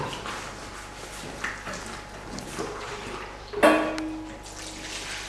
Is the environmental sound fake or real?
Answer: real